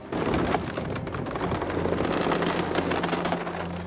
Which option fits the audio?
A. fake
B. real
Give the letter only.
B